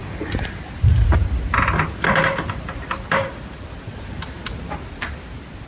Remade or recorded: recorded